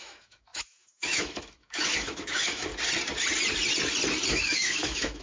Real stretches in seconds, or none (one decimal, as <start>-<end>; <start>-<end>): 2.7-4.3